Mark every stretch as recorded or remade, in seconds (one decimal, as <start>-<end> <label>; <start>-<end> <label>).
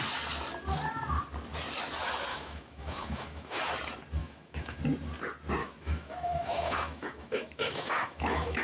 0.0-2.3 recorded; 2.3-3.6 remade; 3.6-4.2 recorded; 4.2-4.8 remade; 4.8-5.6 recorded; 5.6-8.6 remade